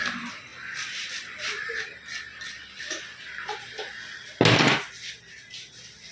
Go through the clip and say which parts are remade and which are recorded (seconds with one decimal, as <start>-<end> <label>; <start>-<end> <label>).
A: 0.0-0.5 recorded; 0.5-1.7 remade; 1.7-6.1 recorded